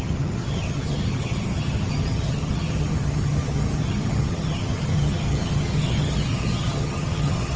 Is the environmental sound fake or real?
fake